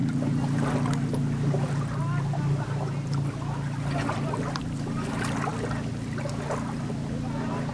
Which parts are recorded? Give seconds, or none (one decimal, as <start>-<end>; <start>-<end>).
0.0-7.7